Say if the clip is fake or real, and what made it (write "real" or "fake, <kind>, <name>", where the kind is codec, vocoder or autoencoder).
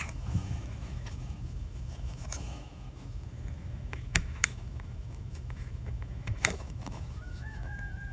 fake, autoencoder, DAC-VAE